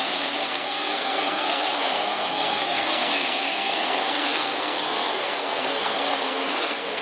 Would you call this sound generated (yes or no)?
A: yes